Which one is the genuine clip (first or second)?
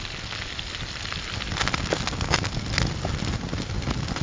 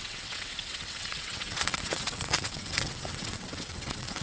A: first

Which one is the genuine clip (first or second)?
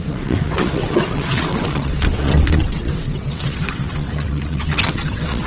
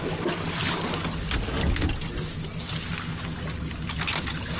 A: second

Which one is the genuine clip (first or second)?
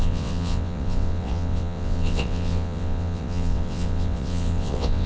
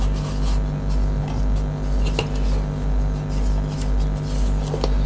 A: second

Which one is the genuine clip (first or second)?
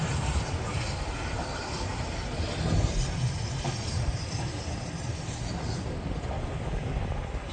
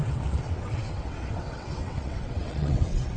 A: first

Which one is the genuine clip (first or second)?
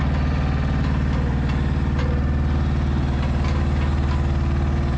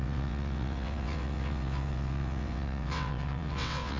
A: first